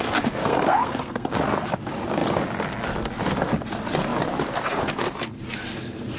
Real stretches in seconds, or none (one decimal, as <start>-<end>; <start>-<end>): 0.0-0.4; 1.4-6.2